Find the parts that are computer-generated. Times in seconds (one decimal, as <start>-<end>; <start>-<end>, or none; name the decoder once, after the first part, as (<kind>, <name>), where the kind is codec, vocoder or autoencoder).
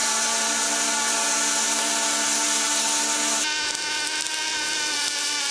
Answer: 4.5-5.5 (vocoder, BigVGAN v2)